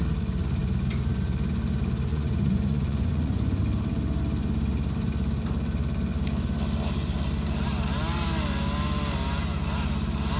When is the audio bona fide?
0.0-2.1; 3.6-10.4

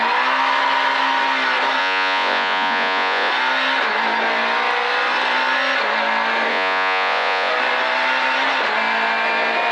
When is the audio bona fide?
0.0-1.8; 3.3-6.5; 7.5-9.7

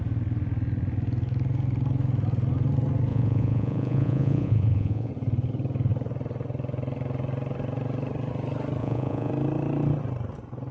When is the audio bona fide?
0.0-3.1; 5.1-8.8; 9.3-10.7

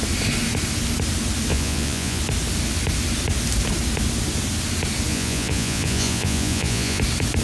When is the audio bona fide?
0.0-1.5; 2.2-5.1; 7.0-7.4

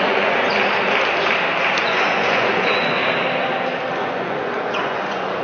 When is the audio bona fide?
0.5-1.8; 3.0-3.9

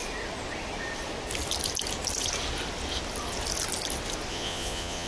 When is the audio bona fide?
0.0-4.3